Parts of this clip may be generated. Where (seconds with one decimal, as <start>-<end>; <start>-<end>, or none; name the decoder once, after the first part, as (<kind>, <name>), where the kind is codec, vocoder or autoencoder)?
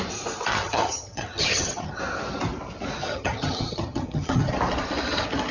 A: 0.5-2.0 (vocoder, HiFi-GAN); 3.0-4.5